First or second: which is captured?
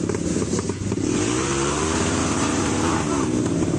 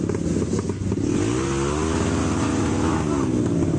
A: second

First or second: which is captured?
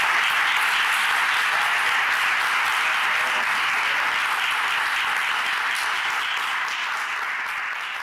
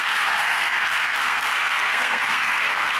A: first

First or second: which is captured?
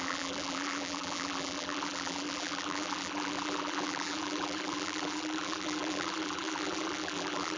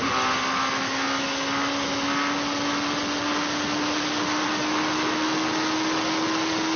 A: second